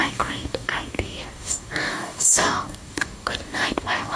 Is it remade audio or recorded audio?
remade